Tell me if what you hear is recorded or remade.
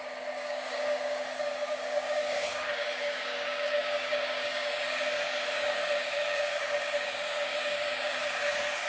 remade